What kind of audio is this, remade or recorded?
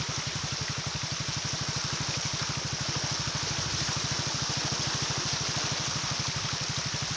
recorded